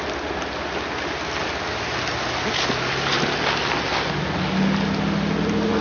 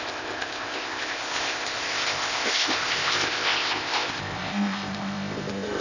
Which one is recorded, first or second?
first